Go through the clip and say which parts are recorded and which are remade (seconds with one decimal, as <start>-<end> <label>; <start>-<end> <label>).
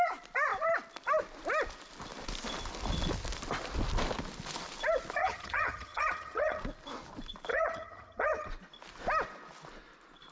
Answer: 0.0-5.2 recorded; 5.2-6.6 remade; 6.6-7.5 recorded; 7.5-8.5 remade; 8.5-10.3 recorded